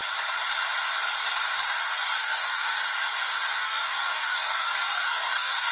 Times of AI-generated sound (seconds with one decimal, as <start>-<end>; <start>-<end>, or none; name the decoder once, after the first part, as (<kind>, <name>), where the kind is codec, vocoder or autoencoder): 2.2-2.8 (codec, DAC); 3.5-5.7